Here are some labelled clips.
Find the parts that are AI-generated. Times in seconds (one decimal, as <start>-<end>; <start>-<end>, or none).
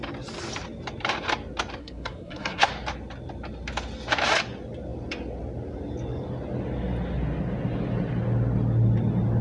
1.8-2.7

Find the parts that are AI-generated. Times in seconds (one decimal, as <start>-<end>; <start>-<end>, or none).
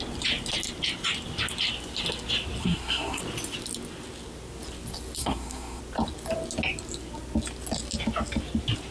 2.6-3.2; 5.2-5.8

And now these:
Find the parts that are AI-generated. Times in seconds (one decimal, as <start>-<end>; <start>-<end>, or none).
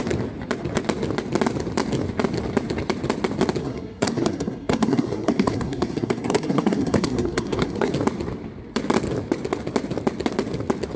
3.6-7.9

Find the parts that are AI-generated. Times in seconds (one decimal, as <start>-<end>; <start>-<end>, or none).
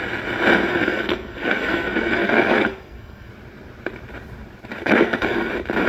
0.7-3.3; 4.8-5.5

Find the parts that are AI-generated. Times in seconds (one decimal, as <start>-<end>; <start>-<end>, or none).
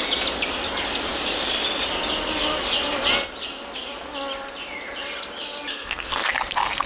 5.7-6.3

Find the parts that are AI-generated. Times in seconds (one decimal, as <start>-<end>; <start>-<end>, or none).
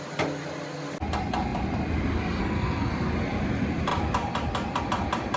2.4-2.9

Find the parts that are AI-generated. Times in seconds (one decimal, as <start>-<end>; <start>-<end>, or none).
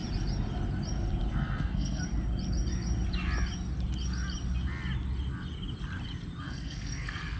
1.3-2.0; 6.4-7.4